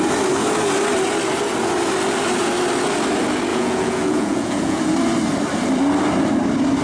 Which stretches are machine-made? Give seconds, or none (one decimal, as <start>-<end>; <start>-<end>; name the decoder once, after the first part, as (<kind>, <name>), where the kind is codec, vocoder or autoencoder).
3.5-4.8 (vocoder, Vocos)